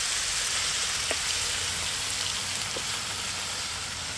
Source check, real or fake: real